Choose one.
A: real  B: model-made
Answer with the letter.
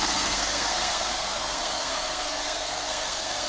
B